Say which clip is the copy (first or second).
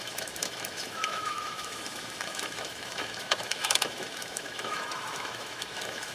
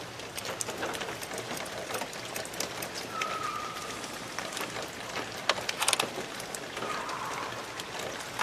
first